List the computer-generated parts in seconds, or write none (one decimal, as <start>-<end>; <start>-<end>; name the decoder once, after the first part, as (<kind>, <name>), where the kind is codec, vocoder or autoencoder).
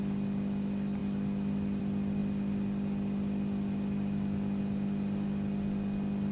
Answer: none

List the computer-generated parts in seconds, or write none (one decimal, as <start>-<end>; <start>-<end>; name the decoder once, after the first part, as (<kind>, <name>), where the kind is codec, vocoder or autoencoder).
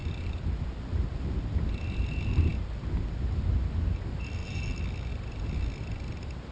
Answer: none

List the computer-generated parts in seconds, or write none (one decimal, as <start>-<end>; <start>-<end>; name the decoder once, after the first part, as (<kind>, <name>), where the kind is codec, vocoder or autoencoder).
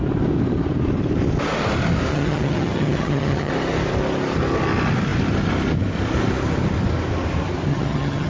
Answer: 2.1-3.5 (vocoder, HiFi-GAN); 7.7-8.3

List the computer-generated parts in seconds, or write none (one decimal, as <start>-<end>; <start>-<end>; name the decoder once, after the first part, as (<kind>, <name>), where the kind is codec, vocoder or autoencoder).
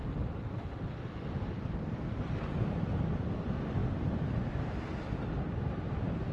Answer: none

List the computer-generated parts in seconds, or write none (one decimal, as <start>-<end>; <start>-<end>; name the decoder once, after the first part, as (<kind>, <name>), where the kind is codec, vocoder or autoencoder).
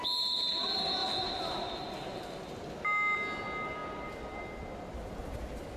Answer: none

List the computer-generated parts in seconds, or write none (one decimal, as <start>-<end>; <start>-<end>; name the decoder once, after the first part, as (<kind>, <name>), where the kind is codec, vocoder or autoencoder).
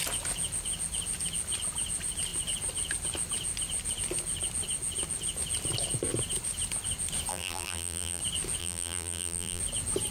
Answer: 7.3-8.2 (vocoder, BigVGAN v2); 8.6-9.6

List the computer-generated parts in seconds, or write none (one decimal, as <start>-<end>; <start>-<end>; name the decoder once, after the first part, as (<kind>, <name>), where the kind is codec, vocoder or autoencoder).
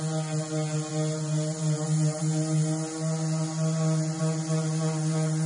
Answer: none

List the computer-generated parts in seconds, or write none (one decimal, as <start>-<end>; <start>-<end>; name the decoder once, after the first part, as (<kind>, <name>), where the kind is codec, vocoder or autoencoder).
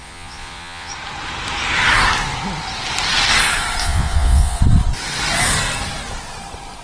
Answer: 0.0-0.9 (vocoder, Vocos); 3.8-4.6